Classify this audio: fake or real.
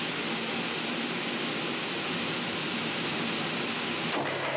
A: real